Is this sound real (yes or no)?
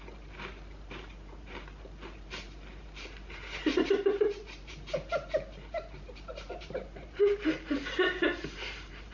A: no